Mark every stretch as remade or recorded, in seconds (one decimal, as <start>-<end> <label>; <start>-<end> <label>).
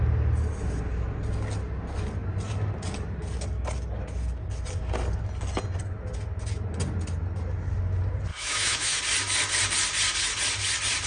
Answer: 0.0-8.3 recorded; 8.3-9.0 remade; 9.0-11.1 recorded